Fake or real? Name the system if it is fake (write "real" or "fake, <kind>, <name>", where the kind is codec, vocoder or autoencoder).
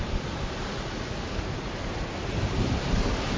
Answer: real